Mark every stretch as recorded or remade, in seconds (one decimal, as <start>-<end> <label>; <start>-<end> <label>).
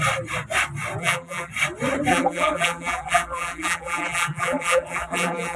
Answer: 0.0-1.0 recorded; 1.0-1.5 remade; 1.5-2.1 recorded; 2.1-5.6 remade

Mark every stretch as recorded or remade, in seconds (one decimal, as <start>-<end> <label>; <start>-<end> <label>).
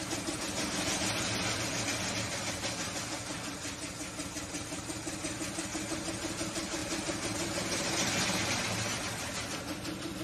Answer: 0.0-10.2 recorded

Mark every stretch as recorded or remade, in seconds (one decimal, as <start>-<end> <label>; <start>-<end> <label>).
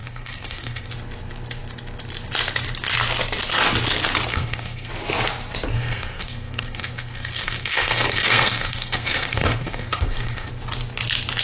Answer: 0.0-0.9 remade; 0.9-4.3 recorded; 4.3-4.9 remade; 4.9-5.7 recorded; 5.7-10.5 remade; 10.5-11.4 recorded